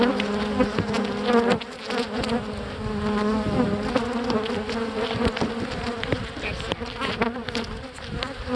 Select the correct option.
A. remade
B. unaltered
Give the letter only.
B